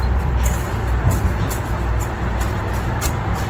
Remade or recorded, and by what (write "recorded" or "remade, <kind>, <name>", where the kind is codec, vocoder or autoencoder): remade, vocoder, BigVGAN v2